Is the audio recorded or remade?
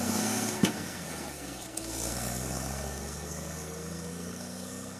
remade